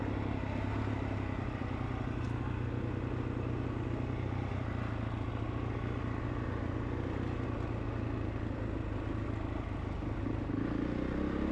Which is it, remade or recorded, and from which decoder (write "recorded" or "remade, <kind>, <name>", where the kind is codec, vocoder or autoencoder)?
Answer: recorded